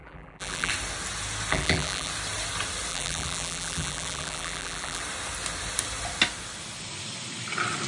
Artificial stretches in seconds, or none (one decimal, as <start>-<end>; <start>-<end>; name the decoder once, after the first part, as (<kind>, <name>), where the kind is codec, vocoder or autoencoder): 0.0-0.7 (vocoder, BigVGAN v2); 1.5-2.1; 2.9-5.0